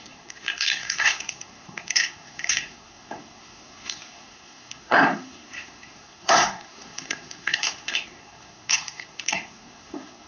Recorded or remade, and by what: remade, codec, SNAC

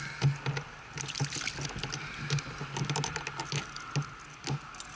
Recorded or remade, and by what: recorded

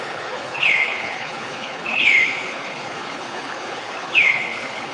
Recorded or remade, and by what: remade, codec, HILCodec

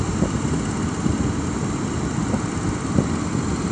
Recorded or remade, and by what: recorded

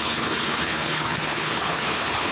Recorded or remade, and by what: remade, codec, HILCodec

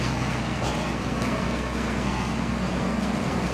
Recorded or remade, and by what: remade, codec, SNAC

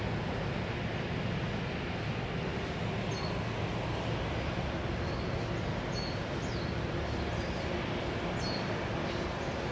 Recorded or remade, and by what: recorded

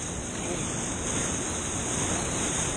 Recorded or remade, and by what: recorded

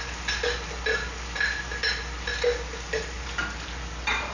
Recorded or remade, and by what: recorded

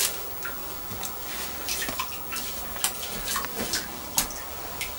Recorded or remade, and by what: recorded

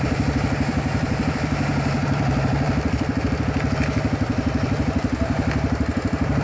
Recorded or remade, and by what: remade, vocoder, BigVGAN v2